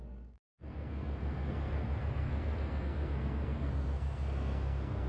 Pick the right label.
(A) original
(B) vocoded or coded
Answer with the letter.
B